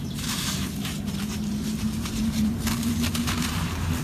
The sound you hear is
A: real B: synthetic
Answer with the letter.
B